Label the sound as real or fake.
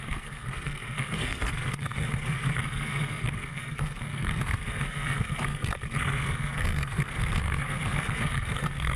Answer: fake